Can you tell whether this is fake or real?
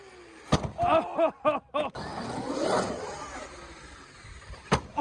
real